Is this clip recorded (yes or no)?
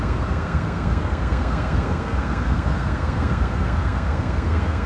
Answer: no